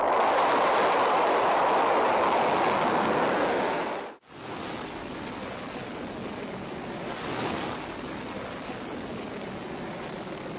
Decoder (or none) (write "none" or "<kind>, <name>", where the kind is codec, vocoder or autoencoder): none